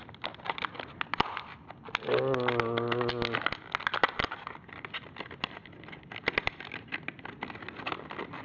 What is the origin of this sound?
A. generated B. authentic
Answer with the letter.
B